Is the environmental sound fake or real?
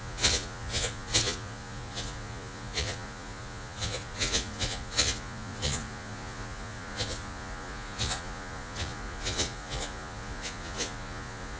fake